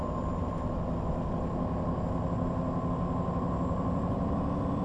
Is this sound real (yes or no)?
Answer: yes